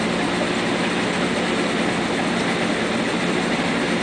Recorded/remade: recorded